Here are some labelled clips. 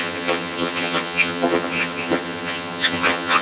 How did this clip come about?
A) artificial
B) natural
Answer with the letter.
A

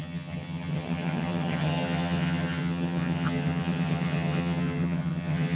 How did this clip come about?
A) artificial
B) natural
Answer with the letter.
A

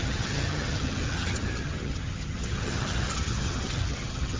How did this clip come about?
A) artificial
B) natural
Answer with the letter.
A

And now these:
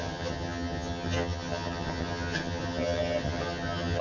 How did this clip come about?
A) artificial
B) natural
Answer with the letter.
A